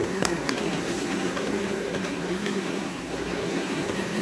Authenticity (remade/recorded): remade